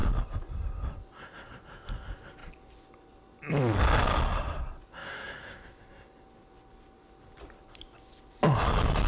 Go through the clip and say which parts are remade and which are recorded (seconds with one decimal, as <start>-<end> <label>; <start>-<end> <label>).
0.0-5.0 recorded; 5.0-5.8 remade; 5.8-9.1 recorded